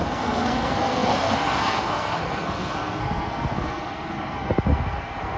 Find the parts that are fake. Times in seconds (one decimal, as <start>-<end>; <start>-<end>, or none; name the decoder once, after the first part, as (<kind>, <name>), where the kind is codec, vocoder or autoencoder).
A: 0.0-5.4 (codec, SNAC)